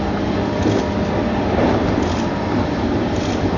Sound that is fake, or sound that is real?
real